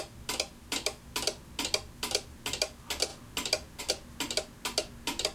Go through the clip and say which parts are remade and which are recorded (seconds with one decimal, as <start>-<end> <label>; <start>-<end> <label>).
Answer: 0.0-5.3 recorded